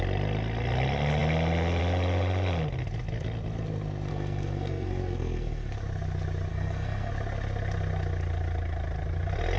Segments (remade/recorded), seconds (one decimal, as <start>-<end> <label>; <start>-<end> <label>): 0.0-4.1 recorded; 4.1-5.7 remade; 5.7-6.5 recorded; 6.5-7.1 remade; 7.1-9.6 recorded